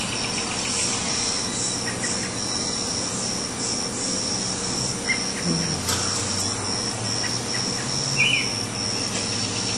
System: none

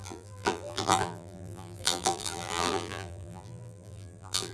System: vocoder, BigVGAN v2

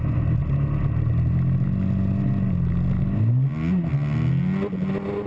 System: none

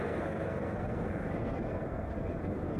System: codec, SNAC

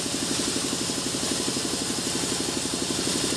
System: none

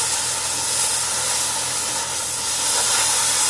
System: none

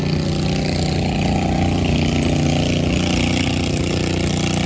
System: none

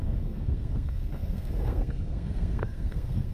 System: codec, SNAC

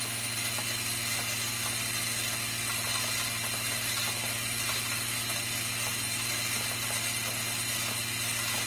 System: none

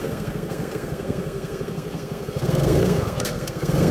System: codec, SNAC